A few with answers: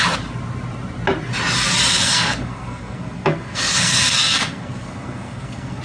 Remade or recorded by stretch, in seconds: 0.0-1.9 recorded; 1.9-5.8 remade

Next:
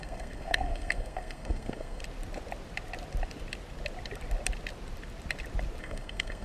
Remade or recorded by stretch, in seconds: 0.0-2.0 remade; 2.0-5.8 recorded; 5.8-6.4 remade

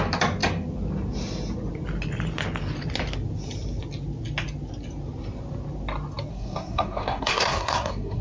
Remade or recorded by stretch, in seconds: 0.0-6.3 recorded; 6.3-8.2 remade

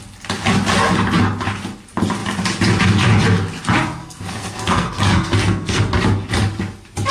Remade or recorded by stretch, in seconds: 0.0-4.0 recorded; 4.0-5.8 remade; 5.8-7.1 recorded

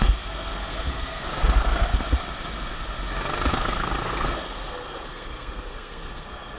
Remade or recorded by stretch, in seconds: 0.0-1.9 remade; 1.9-3.5 recorded; 3.5-6.6 remade